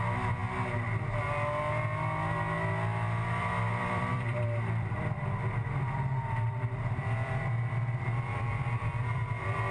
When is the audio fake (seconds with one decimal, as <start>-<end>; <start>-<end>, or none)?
0.0-0.4; 3.3-9.7